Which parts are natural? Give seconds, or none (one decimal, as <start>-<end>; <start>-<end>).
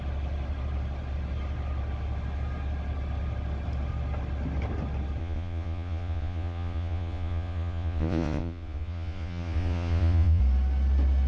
0.0-5.2; 10.4-11.3